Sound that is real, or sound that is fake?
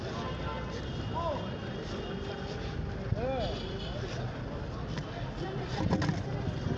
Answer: real